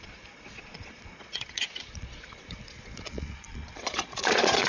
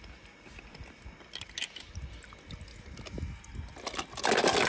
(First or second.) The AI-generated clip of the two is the first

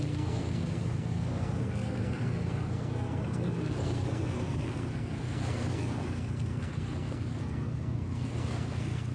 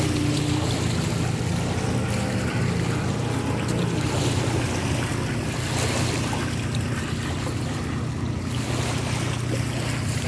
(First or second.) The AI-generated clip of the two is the first